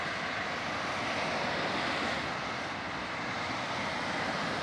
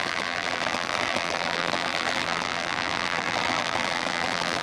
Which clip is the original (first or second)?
first